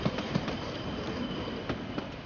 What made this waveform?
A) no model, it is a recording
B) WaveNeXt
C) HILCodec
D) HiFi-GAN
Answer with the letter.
A